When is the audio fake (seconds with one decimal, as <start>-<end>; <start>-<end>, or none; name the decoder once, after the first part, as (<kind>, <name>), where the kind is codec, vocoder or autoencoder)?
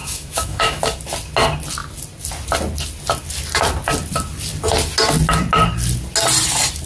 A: 0.0-0.8 (autoencoder, DAC-VAE)